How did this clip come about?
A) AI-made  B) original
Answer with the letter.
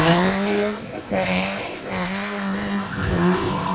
A